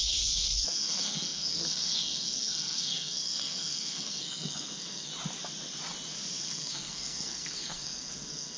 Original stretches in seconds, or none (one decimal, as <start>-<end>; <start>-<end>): 5.1-6.4